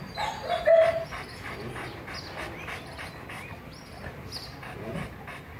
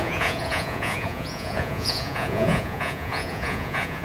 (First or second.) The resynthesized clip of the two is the second